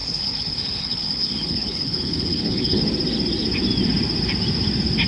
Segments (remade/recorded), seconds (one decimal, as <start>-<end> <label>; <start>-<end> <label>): 0.0-2.8 remade; 2.8-5.1 recorded